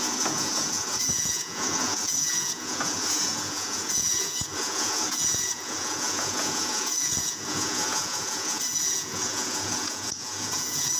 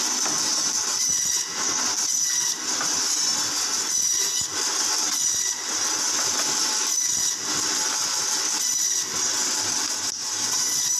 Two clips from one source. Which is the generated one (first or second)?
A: first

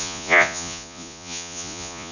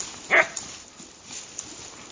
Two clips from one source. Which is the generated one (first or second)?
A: first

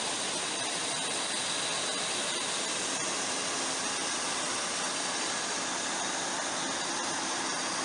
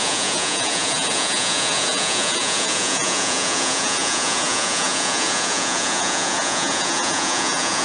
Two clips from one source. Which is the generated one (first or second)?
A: second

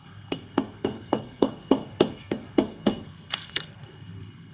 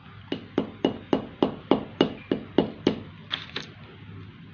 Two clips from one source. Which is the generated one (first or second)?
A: first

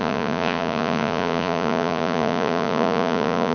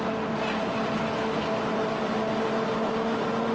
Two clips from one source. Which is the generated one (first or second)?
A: first